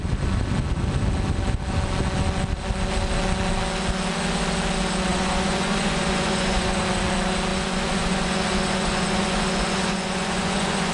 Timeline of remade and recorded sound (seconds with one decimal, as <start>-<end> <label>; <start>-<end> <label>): 0.0-5.1 recorded; 5.1-6.8 remade; 6.8-7.5 recorded; 7.5-10.9 remade